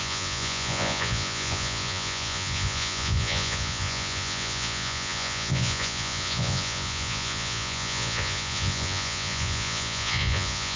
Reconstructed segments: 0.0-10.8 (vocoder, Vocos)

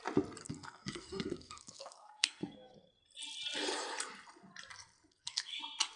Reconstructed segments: 0.4-2.9 (codec, SNAC); 5.1-5.6

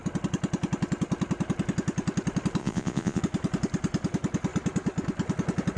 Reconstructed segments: 2.6-3.2 (vocoder, Vocos)

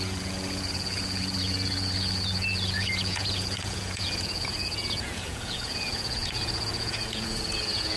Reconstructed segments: 0.0-8.0 (vocoder, Vocos)

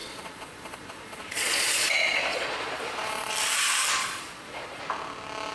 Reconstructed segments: 0.0-3.3 (vocoder, Vocos); 4.0-4.8

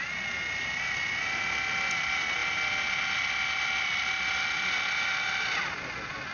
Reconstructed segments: none

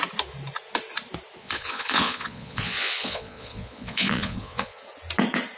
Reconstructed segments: 1.4-4.8 (vocoder, Vocos)